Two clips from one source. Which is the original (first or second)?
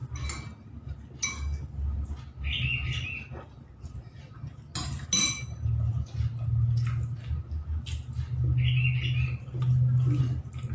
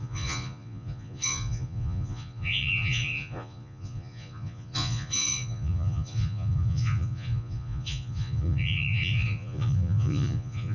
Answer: first